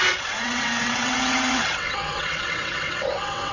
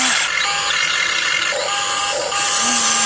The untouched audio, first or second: second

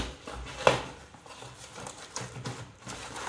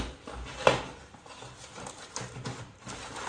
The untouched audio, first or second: second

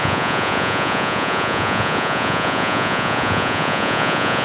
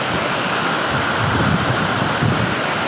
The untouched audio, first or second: second